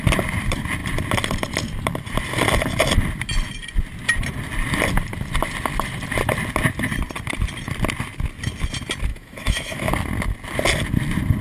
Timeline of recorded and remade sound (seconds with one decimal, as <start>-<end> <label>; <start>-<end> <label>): 0.0-9.1 recorded; 9.1-9.9 remade; 9.9-11.4 recorded